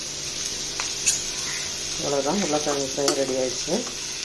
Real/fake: real